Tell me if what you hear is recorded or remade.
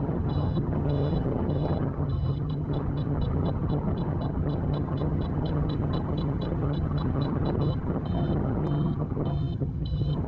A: remade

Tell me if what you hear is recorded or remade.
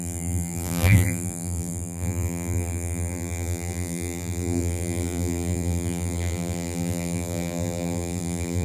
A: remade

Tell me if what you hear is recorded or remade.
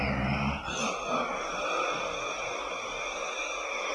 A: recorded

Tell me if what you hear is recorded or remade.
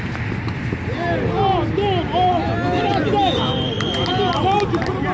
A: recorded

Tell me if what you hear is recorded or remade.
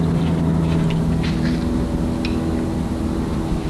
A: recorded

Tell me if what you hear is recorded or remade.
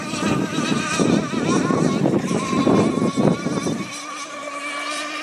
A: remade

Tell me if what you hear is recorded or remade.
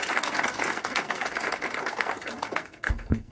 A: remade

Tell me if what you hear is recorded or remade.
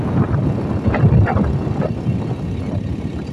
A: recorded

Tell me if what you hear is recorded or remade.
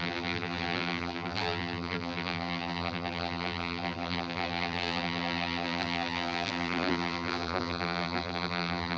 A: remade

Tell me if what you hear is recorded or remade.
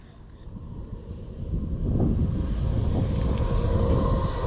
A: recorded